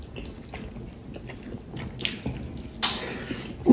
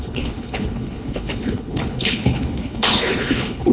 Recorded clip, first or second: first